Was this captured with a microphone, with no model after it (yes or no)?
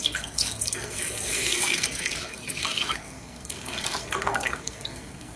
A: no